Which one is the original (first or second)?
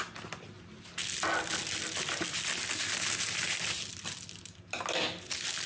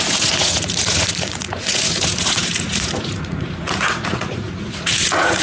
first